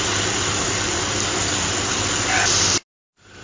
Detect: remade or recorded recorded